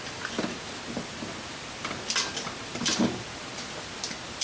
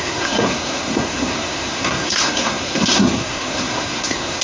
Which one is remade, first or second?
second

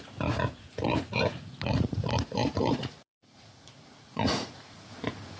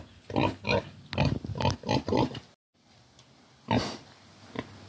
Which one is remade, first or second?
first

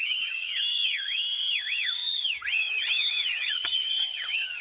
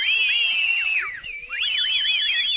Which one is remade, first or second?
first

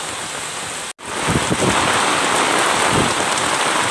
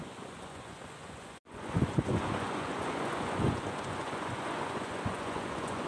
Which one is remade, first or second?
second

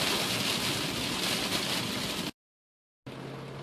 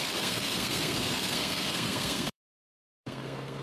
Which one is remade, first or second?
second